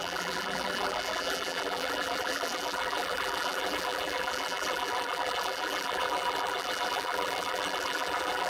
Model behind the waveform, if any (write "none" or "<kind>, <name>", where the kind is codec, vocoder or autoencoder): vocoder, BigVGAN v2